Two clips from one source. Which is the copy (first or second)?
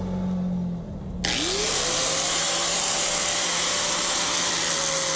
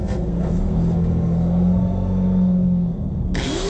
second